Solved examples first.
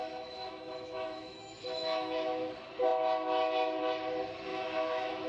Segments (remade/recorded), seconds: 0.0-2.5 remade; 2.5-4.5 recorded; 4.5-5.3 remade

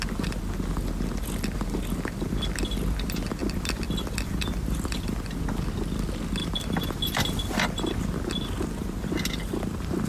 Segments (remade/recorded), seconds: 0.0-3.4 recorded; 3.4-5.4 remade; 5.4-6.4 recorded; 6.4-7.5 remade; 7.5-10.1 recorded

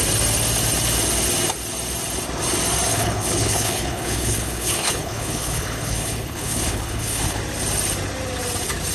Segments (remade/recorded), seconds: 0.0-2.9 recorded; 2.9-7.4 remade; 7.4-8.9 recorded

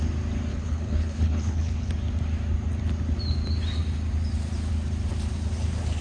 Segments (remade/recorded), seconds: 0.0-0.5 recorded; 0.5-1.9 remade; 1.9-6.0 recorded

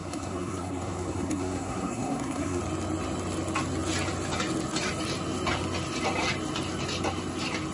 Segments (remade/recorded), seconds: 0.0-2.6 remade; 2.6-7.7 recorded